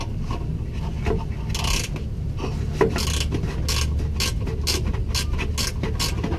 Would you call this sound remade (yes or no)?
no